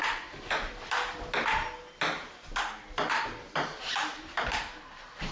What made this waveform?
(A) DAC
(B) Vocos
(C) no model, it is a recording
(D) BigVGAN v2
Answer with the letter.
C